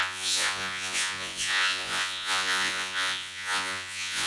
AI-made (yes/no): yes